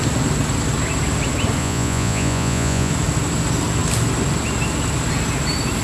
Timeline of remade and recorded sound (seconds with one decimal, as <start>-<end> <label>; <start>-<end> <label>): 0.0-1.6 recorded; 1.6-2.9 remade; 2.9-5.8 recorded